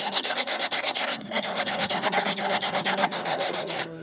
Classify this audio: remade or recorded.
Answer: remade